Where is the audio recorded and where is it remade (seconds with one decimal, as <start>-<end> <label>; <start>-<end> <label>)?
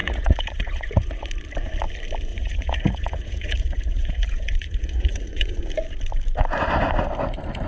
0.0-1.3 remade; 1.3-2.3 recorded; 2.3-5.6 remade; 5.6-7.7 recorded